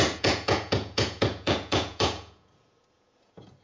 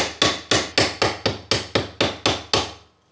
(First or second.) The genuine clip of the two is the second